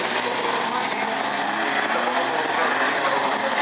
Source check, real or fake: real